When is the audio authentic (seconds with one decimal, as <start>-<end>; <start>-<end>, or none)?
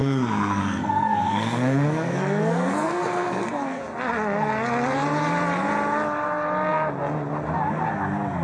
3.8-8.4